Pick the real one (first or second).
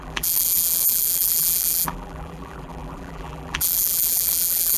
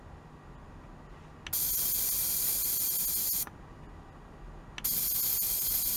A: second